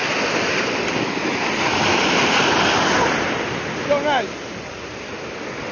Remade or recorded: recorded